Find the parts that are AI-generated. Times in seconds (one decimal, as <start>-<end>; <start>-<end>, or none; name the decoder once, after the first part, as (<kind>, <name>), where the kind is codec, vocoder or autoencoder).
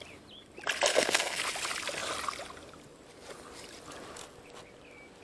0.9-1.4 (codec, SNAC)